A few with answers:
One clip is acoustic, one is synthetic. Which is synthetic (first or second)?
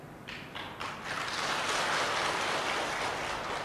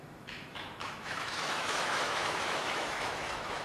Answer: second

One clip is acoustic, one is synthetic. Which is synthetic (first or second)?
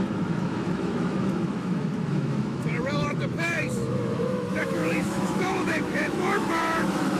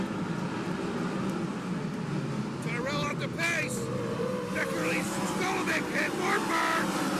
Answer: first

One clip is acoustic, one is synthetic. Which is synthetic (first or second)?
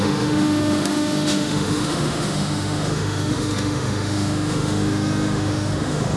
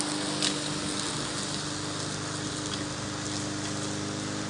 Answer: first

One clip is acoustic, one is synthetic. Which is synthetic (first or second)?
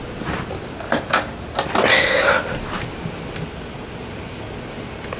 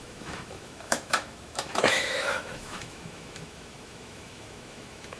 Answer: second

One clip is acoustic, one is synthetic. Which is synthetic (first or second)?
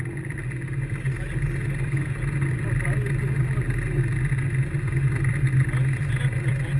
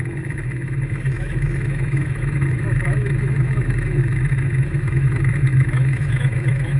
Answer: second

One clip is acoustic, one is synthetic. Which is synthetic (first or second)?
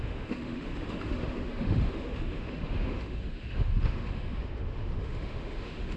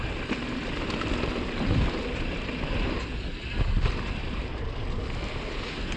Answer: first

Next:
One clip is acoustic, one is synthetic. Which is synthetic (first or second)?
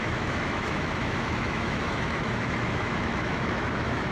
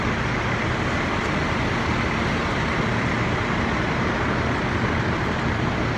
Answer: first